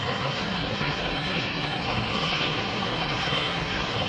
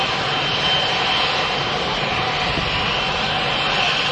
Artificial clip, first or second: first